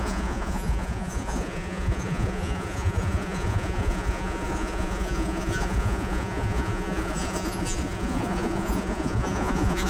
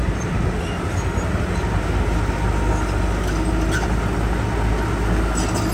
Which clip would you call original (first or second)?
second